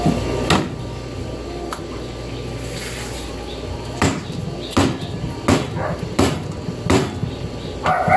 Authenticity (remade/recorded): recorded